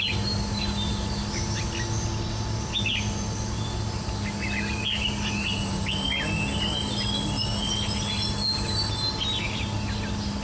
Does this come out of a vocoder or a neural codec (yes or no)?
no